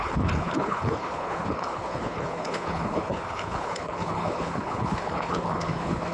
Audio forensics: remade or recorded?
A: remade